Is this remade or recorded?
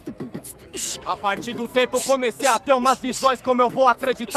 remade